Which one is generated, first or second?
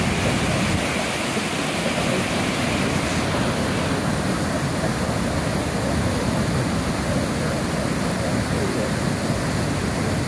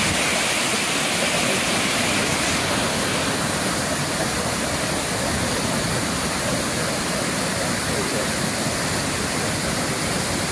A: second